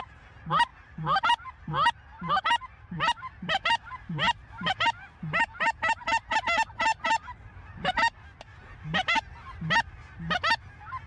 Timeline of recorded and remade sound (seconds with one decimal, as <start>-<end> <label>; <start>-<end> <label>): 0.0-0.7 recorded; 0.7-1.7 remade; 1.7-2.7 recorded; 2.7-5.2 remade; 5.2-6.9 recorded; 6.9-9.7 remade; 9.7-11.1 recorded